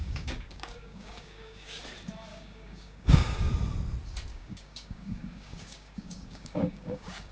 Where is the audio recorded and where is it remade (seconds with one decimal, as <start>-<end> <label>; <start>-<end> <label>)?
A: 0.0-1.8 remade; 1.8-2.3 recorded; 2.3-3.5 remade; 3.5-4.3 recorded; 4.3-7.3 remade